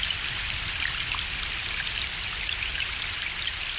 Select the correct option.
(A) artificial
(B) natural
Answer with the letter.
B